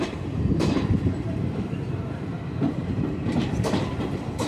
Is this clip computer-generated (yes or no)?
yes